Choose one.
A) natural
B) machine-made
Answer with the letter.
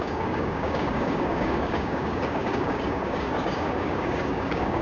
B